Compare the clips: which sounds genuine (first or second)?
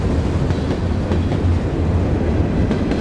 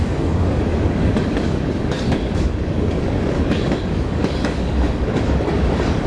first